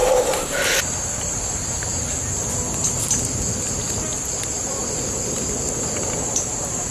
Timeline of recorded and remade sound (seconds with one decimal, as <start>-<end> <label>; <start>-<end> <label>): 0.0-1.2 remade; 1.2-6.9 recorded